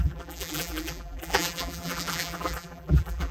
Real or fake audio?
fake